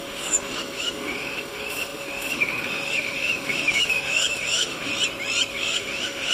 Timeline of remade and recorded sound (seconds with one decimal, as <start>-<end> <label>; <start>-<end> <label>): 0.0-4.9 remade; 4.9-5.5 recorded; 5.5-6.3 remade